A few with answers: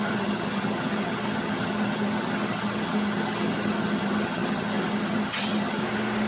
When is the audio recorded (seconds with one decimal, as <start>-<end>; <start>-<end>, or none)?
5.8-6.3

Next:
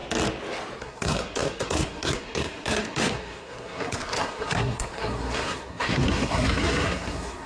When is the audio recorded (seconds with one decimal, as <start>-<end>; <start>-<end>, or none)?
0.0-0.8

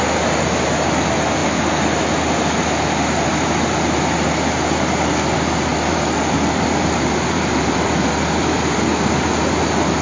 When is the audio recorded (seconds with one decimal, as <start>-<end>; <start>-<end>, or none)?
0.0-5.7; 8.9-10.0

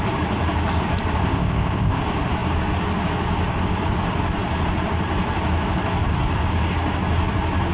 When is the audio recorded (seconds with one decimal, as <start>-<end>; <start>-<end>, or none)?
0.0-1.2; 2.0-7.7

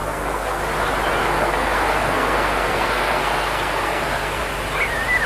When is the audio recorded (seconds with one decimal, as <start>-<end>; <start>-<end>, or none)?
0.6-1.2; 4.4-5.3

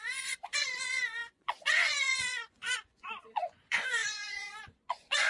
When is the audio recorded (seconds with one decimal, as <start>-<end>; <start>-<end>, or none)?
none